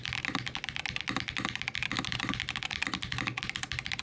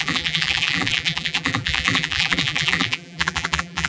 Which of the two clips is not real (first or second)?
second